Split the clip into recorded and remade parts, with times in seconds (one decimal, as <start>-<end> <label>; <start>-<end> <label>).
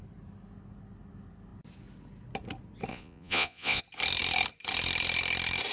0.0-2.9 recorded; 2.9-3.8 remade; 3.8-5.7 recorded